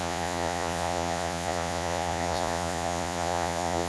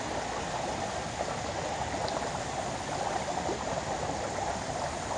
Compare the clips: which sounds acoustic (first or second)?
second